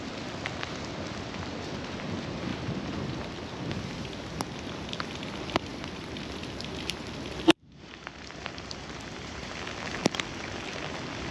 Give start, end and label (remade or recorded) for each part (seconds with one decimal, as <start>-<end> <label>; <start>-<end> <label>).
0.0-2.5 recorded; 2.5-4.4 remade; 4.4-5.7 recorded; 5.7-9.5 remade; 9.5-10.0 recorded; 10.0-10.7 remade; 10.7-11.3 recorded